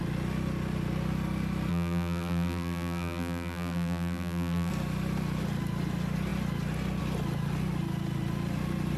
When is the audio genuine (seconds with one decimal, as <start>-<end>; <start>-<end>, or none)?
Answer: 0.0-1.7; 4.7-9.0